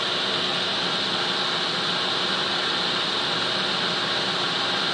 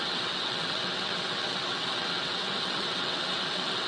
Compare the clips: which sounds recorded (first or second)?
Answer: first